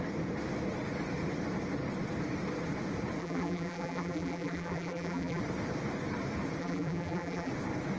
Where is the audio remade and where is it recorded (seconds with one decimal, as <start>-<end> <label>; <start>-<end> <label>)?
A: 0.0-3.2 recorded; 3.2-5.4 remade; 5.4-6.6 recorded; 6.6-7.5 remade; 7.5-8.0 recorded